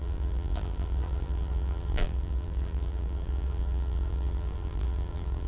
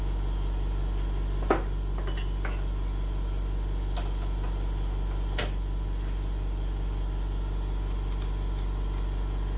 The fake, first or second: first